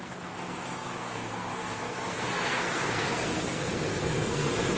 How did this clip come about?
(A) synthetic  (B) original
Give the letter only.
A